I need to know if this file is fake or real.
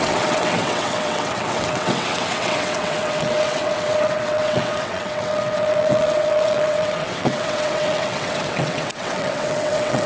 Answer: fake